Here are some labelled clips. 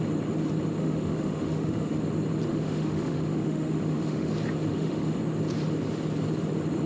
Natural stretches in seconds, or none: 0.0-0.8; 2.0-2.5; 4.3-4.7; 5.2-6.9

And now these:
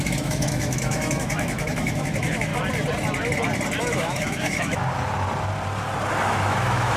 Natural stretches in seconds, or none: 2.5-3.8; 4.8-6.2

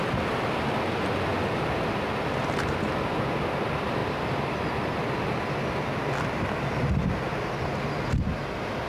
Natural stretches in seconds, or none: 0.0-8.9

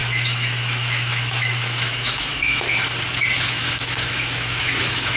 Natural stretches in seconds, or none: 2.8-3.4

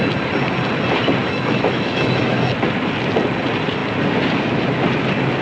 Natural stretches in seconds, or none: 0.0-1.2; 2.5-5.4

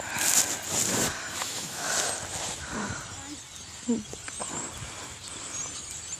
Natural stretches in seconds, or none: 0.0-1.4; 1.9-6.2

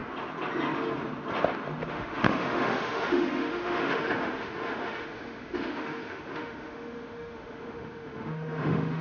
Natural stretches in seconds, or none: 0.0-1.9